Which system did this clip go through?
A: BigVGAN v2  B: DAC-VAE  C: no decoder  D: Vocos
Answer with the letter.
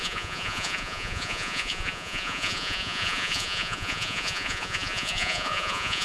D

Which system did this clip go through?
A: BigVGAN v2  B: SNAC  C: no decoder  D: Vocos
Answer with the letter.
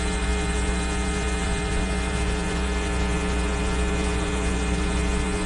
D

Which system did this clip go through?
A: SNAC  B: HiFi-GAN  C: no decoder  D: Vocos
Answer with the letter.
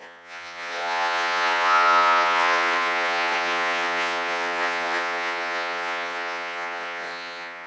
D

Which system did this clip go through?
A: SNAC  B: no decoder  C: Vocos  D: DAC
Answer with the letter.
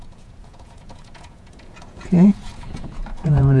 C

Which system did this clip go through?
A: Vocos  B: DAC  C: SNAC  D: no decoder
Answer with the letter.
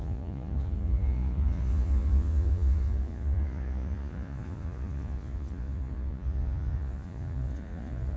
A